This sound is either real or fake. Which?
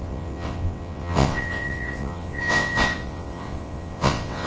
fake